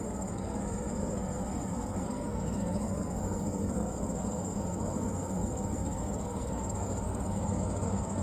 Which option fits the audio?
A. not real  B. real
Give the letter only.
A